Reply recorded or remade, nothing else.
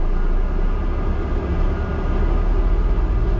recorded